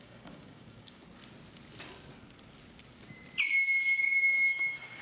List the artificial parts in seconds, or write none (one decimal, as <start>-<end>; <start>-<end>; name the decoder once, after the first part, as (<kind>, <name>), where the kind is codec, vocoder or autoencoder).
0.0-1.0 (codec, DAC); 4.0-5.0

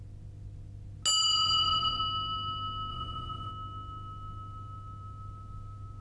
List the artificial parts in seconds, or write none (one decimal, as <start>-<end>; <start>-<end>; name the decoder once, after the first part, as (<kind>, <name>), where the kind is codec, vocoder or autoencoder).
1.2-2.0 (vocoder, Vocos); 2.9-3.5

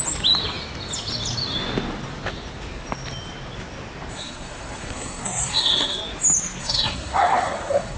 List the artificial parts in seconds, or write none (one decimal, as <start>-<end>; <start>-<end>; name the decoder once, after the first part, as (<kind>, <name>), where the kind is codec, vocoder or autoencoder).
4.1-6.0 (codec, SNAC); 6.6-8.0

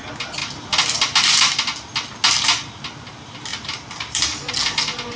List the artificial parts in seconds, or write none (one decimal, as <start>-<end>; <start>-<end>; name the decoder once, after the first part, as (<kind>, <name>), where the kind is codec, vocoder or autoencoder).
3.5-4.5 (vocoder, BigVGAN v2)